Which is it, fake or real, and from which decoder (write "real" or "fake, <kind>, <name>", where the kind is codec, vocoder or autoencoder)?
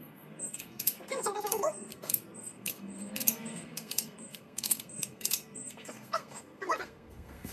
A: fake, codec, SNAC